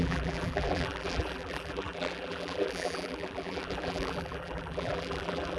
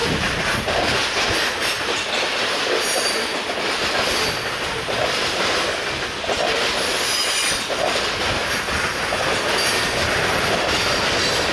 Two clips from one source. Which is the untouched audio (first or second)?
second